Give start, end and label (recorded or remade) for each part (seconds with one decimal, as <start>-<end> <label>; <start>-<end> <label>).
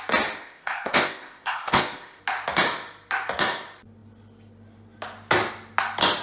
0.0-0.4 recorded; 0.4-2.2 remade; 2.2-6.2 recorded